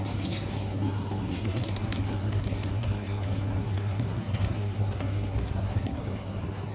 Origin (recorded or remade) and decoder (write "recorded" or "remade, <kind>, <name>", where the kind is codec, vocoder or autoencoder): remade, codec, SNAC